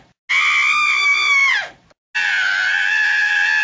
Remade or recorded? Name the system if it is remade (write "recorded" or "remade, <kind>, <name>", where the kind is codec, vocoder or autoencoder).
recorded